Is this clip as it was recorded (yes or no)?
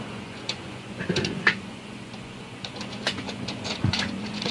no